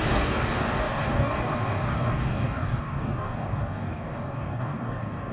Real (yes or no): no